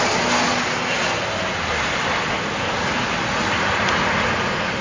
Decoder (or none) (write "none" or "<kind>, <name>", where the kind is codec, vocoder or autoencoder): none